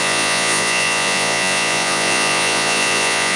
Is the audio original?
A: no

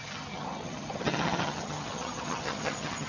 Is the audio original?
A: no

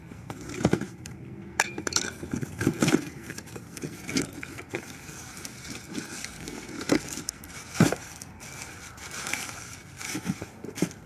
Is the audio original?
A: no